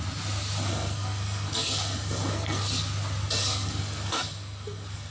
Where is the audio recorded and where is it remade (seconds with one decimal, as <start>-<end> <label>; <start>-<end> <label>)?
0.0-0.7 recorded; 0.7-2.7 remade; 2.7-3.4 recorded; 3.4-5.1 remade